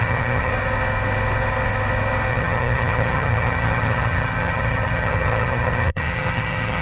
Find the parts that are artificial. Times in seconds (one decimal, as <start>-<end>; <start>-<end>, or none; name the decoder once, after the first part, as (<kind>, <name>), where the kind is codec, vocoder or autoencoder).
0.0-0.5 (vocoder, HiFi-GAN); 2.3-6.8